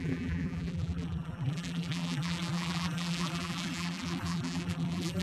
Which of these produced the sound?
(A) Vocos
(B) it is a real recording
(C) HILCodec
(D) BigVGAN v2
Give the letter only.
D